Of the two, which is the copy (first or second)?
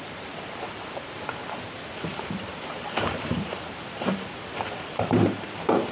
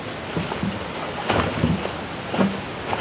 first